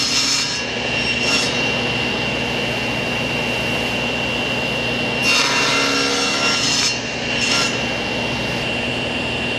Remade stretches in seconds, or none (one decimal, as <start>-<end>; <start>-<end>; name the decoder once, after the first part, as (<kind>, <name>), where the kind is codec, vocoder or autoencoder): none